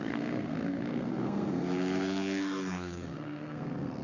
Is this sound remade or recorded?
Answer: remade